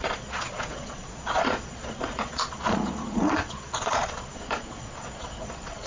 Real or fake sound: fake